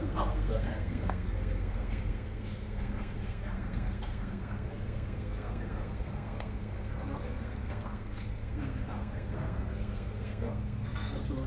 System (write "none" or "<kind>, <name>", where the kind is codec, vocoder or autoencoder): codec, SNAC